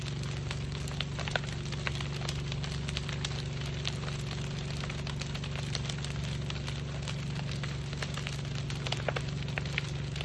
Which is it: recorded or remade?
recorded